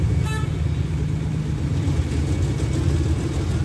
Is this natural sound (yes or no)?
yes